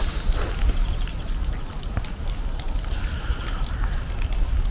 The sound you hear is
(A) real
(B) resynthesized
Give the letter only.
A